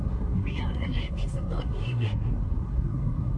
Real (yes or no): no